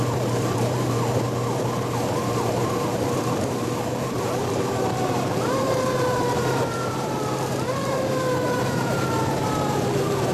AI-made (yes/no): yes